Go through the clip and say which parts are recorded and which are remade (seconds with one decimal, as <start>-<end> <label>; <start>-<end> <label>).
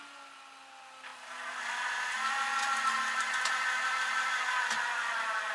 0.0-5.5 recorded